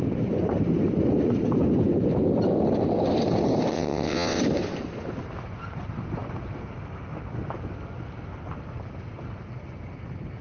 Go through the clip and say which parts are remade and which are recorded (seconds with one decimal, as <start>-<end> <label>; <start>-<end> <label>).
0.0-3.7 recorded; 3.7-4.4 remade; 4.4-10.4 recorded